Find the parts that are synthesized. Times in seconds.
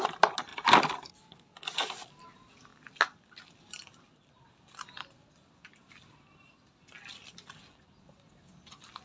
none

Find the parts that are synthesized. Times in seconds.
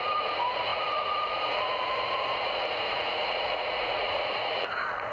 0.0-5.1 (vocoder, Vocos)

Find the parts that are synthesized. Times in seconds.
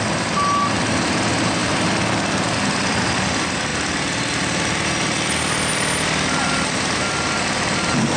1.6-3.0 (vocoder, BigVGAN v2)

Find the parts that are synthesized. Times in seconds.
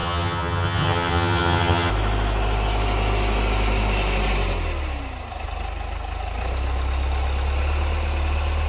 0.0-1.9 (vocoder, HiFi-GAN)